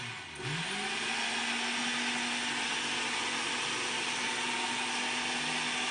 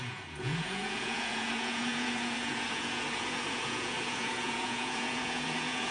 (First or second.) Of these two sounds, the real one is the first